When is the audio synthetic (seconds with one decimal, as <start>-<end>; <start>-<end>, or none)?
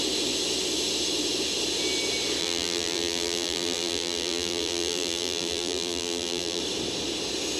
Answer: 2.4-6.6